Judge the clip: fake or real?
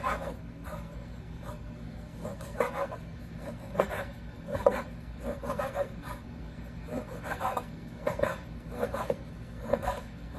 fake